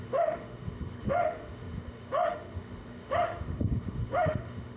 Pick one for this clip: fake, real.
fake